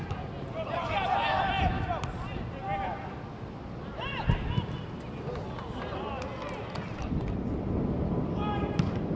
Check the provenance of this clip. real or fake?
real